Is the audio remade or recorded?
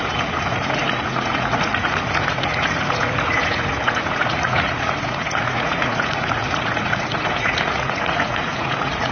remade